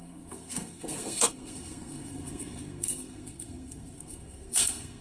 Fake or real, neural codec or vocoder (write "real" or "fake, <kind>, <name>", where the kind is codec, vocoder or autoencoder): fake, codec, SNAC